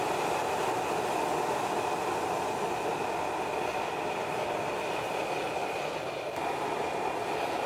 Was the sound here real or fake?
real